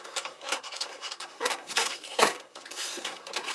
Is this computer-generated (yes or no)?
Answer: yes